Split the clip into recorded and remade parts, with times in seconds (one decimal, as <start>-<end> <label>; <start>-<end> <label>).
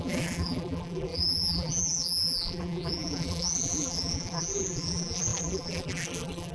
0.0-6.5 remade